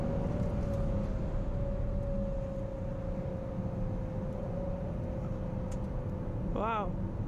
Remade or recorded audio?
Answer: recorded